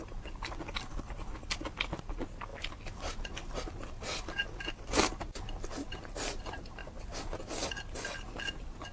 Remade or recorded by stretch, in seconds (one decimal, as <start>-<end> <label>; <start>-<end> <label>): 0.0-8.9 recorded